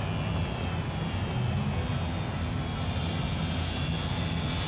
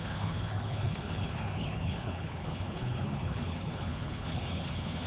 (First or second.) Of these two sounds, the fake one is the second